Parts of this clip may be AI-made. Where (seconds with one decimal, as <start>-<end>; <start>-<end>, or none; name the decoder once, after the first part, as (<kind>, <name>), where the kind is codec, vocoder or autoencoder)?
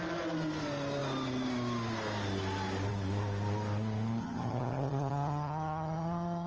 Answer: 4.2-6.5 (vocoder, HiFi-GAN)